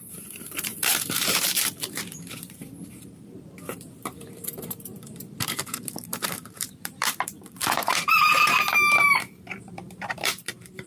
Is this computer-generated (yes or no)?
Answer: yes